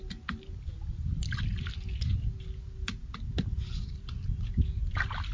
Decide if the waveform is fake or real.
real